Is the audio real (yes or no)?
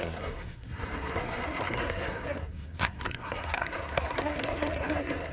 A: no